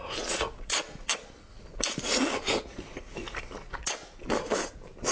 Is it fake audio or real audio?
real